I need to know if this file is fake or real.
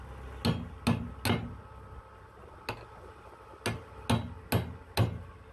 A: real